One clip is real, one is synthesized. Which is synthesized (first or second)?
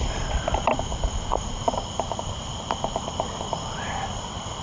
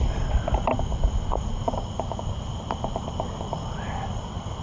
first